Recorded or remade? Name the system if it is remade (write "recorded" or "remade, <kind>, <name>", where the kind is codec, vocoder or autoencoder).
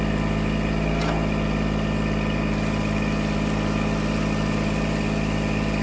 recorded